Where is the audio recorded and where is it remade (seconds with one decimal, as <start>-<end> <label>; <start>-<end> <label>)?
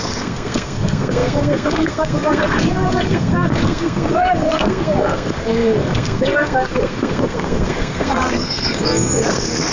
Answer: 0.0-9.7 remade